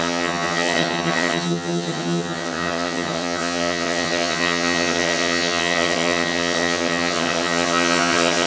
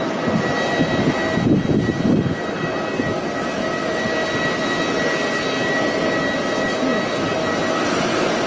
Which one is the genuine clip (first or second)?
second